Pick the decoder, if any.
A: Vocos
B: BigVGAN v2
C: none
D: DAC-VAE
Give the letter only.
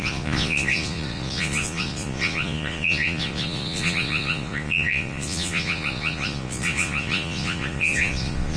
A